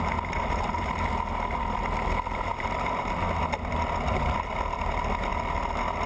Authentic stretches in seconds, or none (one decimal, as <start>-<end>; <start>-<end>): 0.0-6.1